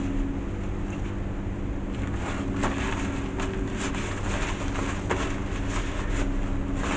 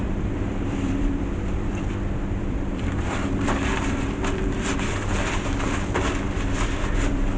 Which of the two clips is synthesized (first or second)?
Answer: second